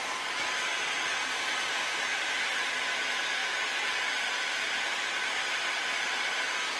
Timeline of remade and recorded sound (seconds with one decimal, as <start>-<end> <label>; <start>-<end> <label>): 0.0-3.4 remade; 3.4-4.3 recorded; 4.3-6.8 remade

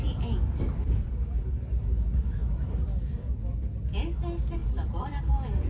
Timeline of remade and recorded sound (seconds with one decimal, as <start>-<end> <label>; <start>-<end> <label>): 0.0-2.4 recorded; 2.4-3.3 remade; 3.3-4.6 recorded; 4.6-5.2 remade; 5.2-5.7 recorded